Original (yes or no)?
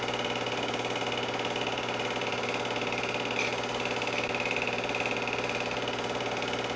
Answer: yes